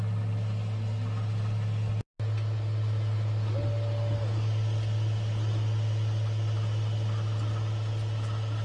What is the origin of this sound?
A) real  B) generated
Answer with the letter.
A